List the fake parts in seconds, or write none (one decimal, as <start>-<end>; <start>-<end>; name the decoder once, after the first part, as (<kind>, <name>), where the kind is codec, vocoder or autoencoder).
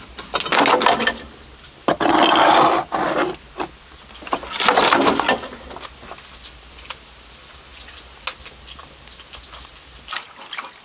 none